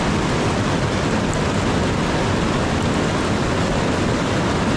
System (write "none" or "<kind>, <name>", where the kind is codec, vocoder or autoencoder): none